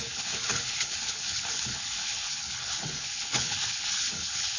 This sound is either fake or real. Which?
fake